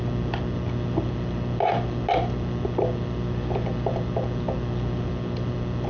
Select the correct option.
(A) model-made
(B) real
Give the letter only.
B